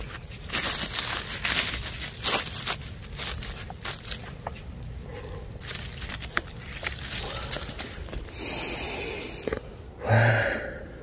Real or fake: real